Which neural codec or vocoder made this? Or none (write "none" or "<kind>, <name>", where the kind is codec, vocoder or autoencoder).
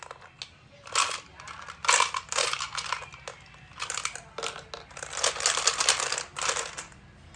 none